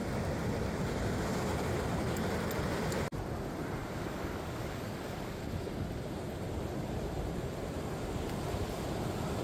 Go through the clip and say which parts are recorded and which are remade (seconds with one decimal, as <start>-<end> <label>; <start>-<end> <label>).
0.0-3.8 recorded; 3.8-5.5 remade; 5.5-9.4 recorded